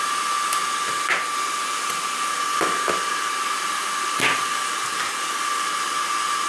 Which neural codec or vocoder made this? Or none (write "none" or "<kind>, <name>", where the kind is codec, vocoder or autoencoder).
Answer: none